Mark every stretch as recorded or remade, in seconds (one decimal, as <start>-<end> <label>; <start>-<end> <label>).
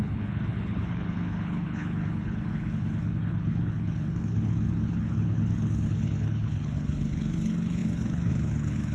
0.0-8.9 remade